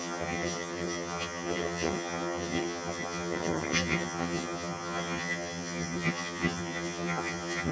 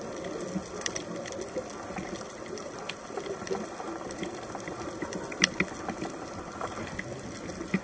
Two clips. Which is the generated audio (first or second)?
first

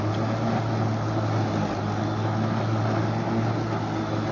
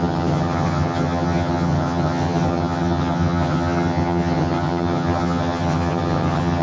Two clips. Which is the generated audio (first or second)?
second